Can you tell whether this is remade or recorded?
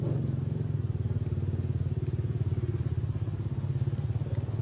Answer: recorded